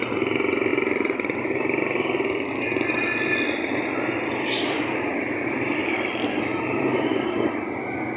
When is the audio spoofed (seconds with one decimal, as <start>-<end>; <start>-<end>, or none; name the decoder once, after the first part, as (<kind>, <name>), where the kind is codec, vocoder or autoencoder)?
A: 0.7-3.2 (vocoder, BigVGAN v2); 5.8-7.6

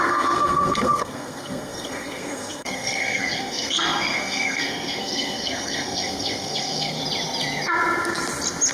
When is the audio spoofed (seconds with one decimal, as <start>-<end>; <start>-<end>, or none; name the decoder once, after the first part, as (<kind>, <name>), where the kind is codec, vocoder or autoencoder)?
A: 0.0-7.0 (codec, SNAC)

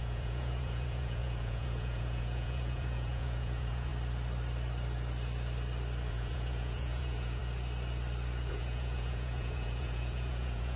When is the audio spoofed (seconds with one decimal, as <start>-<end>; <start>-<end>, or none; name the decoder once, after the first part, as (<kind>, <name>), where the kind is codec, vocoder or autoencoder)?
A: 0.0-3.9 (vocoder, Vocos); 6.1-7.4; 8.5-10.8

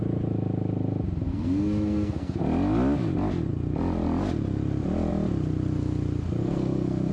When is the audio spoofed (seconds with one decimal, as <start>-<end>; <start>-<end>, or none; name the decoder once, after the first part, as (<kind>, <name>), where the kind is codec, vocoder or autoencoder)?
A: 1.3-2.4 (codec, SNAC); 6.4-7.1

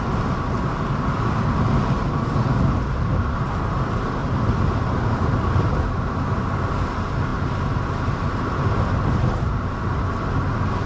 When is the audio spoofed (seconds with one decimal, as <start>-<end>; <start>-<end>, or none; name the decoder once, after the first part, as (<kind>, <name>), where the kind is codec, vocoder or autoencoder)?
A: 4.2-5.8 (vocoder, BigVGAN v2)

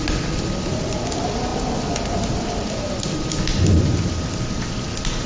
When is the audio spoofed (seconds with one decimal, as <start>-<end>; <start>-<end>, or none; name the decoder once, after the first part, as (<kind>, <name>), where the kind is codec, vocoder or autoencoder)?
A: none